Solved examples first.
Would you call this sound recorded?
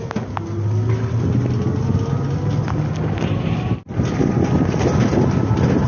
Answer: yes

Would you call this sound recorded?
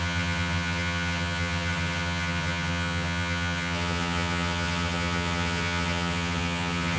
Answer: no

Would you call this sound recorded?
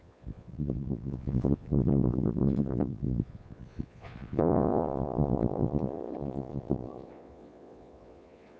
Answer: no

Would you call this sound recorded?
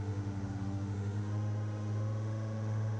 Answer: no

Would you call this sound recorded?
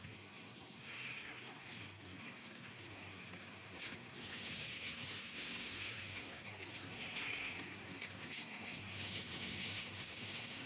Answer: no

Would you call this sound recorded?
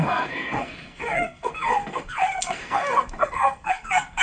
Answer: no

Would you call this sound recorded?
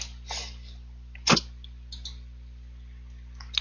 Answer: yes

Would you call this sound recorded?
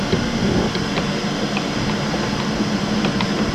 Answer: yes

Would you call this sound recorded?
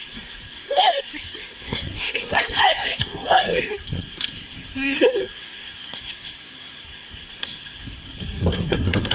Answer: no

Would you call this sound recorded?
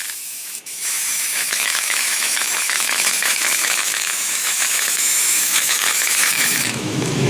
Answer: no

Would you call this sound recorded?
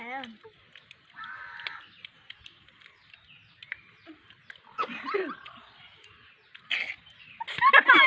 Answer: yes